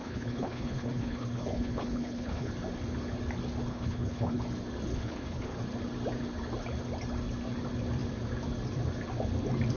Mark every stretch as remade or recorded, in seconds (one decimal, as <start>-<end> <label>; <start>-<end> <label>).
0.0-2.5 remade; 2.5-3.7 recorded; 3.7-4.4 remade; 4.4-4.9 recorded; 4.9-5.6 remade; 5.6-9.8 recorded